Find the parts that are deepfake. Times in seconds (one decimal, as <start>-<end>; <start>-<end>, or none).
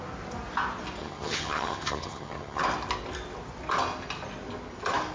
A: 1.0-2.6